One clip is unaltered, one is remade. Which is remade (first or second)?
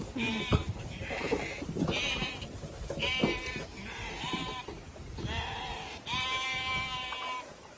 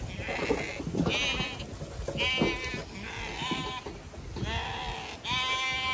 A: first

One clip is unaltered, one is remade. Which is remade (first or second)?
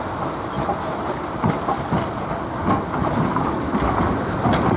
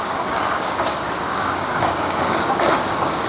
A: second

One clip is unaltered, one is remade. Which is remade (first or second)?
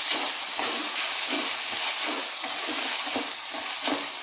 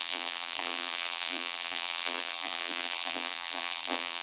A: second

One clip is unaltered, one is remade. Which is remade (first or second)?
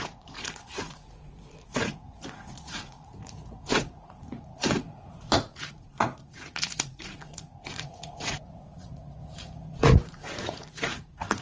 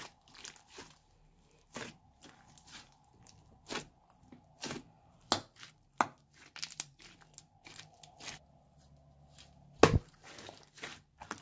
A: first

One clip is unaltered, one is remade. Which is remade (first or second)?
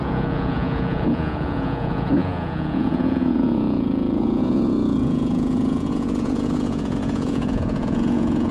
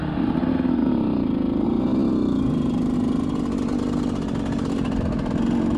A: first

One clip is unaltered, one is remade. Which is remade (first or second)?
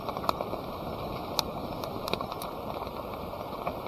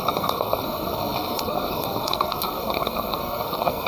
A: second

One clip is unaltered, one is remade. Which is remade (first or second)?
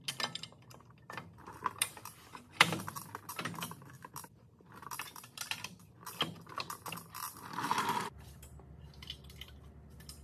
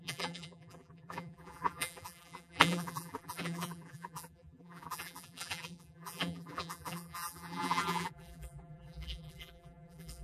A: second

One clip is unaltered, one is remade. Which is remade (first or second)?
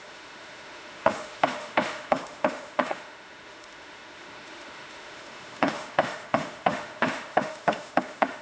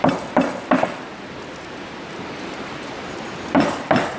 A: first